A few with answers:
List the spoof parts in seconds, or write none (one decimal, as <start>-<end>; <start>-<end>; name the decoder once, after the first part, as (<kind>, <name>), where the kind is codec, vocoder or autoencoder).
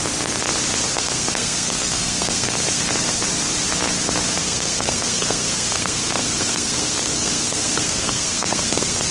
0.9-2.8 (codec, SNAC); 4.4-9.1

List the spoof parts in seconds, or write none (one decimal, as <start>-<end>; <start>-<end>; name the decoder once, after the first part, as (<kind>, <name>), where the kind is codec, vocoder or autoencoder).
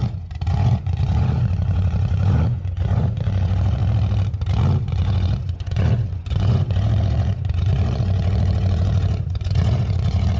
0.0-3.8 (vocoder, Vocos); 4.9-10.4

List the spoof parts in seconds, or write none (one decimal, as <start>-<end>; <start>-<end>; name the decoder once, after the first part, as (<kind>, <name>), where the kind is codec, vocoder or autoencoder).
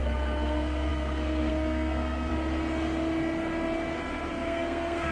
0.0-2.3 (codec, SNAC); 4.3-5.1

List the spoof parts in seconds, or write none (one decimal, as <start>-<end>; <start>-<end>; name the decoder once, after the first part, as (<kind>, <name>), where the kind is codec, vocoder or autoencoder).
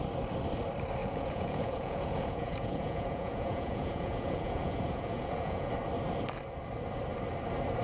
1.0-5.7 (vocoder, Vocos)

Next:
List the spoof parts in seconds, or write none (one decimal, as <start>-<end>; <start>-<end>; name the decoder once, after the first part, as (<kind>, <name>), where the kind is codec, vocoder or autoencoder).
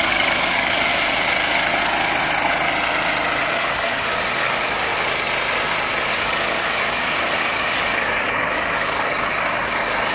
0.0-0.9 (codec, DAC); 3.4-4.9; 6.1-10.1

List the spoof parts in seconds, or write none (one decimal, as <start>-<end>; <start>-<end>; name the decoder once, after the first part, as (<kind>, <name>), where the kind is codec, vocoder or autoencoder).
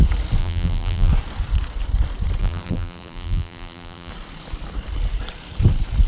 0.4-1.1 (vocoder, BigVGAN v2); 2.4-4.1